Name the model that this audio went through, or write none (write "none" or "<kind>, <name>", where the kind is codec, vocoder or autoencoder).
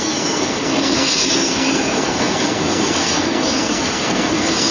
codec, SNAC